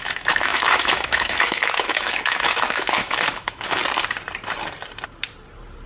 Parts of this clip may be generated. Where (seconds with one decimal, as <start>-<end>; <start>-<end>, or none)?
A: 0.0-3.8